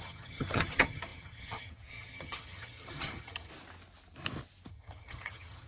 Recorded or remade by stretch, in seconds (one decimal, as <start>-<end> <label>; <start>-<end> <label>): 0.0-3.5 remade; 3.5-4.7 recorded; 4.7-5.7 remade